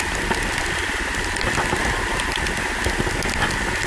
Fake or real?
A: real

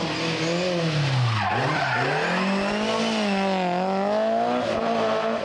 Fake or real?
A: real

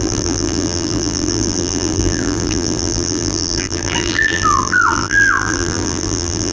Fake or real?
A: fake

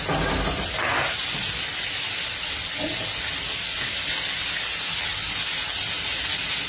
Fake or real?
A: real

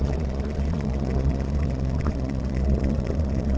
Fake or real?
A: fake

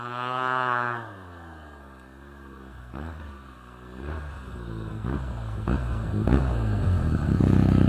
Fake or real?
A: fake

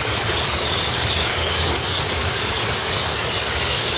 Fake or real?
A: fake